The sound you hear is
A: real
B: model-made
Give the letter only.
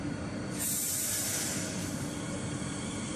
B